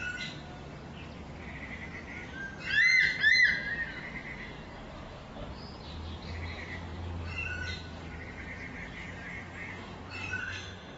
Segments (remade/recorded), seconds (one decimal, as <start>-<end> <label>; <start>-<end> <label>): 0.0-10.4 recorded; 10.4-11.0 remade

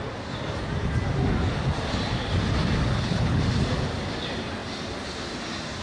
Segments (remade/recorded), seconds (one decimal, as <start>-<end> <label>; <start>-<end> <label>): 0.0-2.9 recorded; 2.9-3.4 remade; 3.4-5.8 recorded

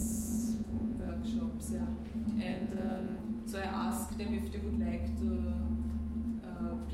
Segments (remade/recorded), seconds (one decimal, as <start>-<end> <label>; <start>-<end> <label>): 0.0-1.1 remade; 1.1-2.5 recorded; 2.5-3.2 remade; 3.2-6.9 recorded

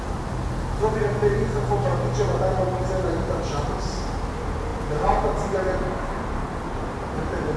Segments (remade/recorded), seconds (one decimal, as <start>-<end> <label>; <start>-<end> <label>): 0.0-7.6 recorded

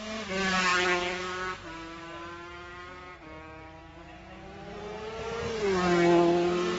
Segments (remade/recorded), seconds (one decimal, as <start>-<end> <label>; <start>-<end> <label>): 0.0-3.9 recorded; 3.9-5.1 remade; 5.1-6.8 recorded

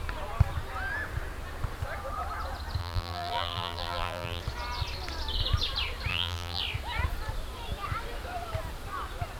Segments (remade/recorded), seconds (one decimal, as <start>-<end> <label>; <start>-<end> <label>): 0.0-2.8 recorded; 2.8-4.4 remade; 4.4-6.1 recorded; 6.1-6.6 remade; 6.6-9.4 recorded